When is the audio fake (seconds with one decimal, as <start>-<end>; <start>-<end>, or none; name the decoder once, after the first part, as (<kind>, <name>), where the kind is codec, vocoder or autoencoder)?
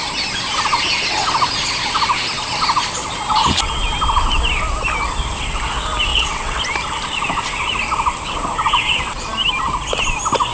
6.1-6.6 (vocoder, WaveNeXt)